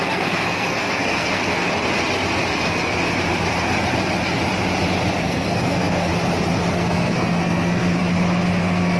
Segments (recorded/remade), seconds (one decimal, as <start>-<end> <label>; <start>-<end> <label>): 0.0-1.6 remade; 1.6-5.2 recorded; 5.2-6.1 remade; 6.1-6.7 recorded; 6.7-8.0 remade; 8.0-8.6 recorded; 8.6-9.0 remade